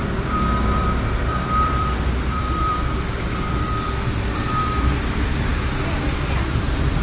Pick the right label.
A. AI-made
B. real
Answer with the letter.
A